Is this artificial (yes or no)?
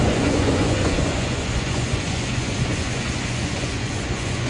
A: yes